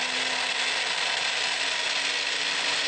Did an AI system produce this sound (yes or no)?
no